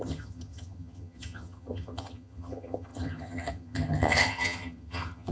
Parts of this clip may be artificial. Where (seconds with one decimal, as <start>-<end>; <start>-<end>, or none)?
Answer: 0.0-5.3